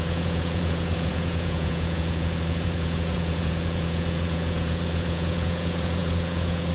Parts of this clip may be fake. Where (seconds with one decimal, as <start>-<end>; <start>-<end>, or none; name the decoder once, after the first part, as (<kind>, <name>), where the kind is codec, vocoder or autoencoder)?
0.0-6.7 (vocoder, Vocos)

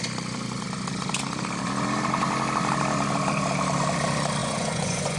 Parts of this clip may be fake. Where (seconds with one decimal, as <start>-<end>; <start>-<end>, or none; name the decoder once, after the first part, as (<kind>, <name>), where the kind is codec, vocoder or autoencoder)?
4.4-5.2 (vocoder, Vocos)